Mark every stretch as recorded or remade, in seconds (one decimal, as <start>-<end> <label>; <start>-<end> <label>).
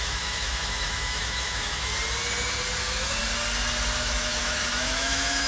0.0-1.9 remade; 1.9-2.8 recorded; 2.8-3.2 remade; 3.2-4.0 recorded; 4.0-5.5 remade